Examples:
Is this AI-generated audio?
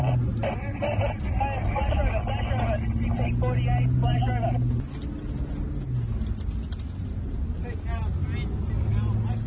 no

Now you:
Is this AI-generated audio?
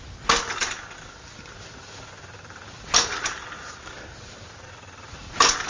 no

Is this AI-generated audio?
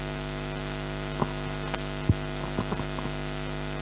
no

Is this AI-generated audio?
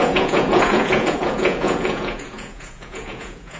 yes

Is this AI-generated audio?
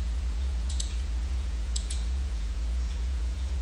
yes